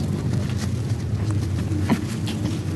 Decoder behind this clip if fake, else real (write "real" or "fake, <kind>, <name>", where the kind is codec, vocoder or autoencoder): real